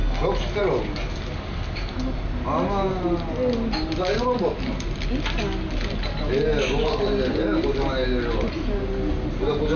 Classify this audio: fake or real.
real